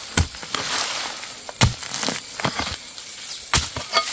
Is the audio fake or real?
real